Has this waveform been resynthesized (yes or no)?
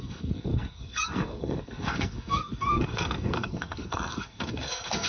yes